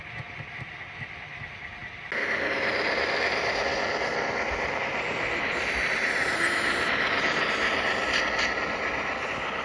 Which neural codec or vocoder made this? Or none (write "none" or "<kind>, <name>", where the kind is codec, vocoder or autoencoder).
none